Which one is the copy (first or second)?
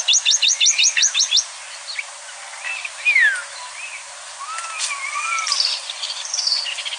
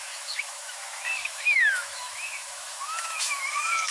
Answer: second